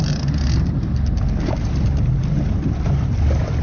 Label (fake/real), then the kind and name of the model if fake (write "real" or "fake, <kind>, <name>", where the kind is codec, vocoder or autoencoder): real